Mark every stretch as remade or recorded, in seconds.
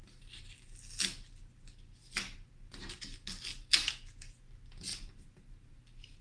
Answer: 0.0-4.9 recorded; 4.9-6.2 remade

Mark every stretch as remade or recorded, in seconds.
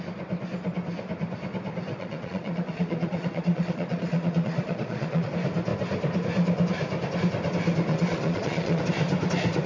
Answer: 0.0-1.9 recorded; 1.9-5.3 remade; 5.3-7.9 recorded; 7.9-8.8 remade; 8.8-9.7 recorded